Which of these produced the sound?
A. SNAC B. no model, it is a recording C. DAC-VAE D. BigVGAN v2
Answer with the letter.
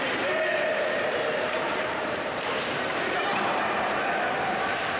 D